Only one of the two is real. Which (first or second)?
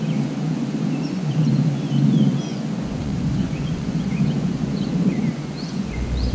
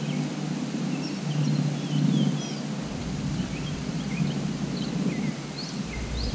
second